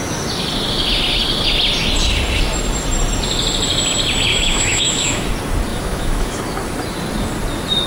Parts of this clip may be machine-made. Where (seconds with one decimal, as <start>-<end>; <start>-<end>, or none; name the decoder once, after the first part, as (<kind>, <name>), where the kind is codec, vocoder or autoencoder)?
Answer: 4.3-5.3 (autoencoder, DAC-VAE); 5.7-6.4